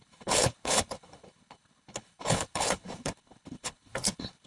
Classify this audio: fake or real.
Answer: fake